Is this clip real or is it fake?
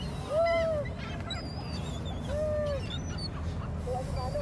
real